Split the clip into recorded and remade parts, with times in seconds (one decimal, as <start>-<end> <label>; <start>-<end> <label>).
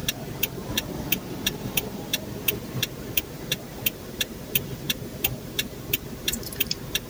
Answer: 0.0-1.6 recorded; 1.6-7.1 remade